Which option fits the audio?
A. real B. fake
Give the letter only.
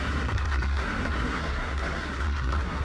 B